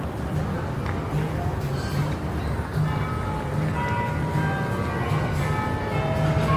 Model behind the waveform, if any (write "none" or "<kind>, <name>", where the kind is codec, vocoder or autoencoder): none